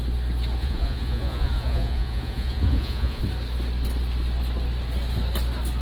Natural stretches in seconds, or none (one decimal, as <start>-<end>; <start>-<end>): 0.0-0.6; 3.2-5.8